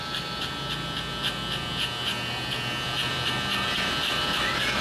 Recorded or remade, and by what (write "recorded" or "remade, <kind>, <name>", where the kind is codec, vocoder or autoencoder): recorded